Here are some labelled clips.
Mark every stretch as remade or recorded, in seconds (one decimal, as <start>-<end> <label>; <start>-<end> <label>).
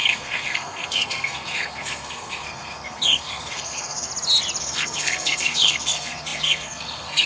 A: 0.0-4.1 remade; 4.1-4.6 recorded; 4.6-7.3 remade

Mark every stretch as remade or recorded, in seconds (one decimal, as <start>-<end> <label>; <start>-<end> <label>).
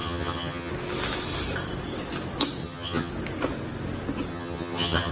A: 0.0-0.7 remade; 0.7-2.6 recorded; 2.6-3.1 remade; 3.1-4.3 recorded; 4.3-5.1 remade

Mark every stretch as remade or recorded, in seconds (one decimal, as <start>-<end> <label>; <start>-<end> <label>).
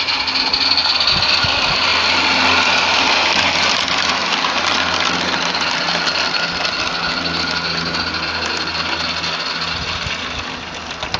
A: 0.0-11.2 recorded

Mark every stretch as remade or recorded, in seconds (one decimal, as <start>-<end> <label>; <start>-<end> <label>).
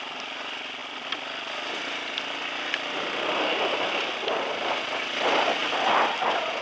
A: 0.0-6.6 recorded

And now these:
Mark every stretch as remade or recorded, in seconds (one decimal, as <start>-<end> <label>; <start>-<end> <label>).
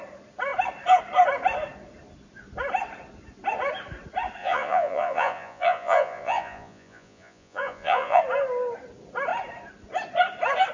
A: 0.0-4.4 recorded; 4.4-8.2 remade; 8.2-10.7 recorded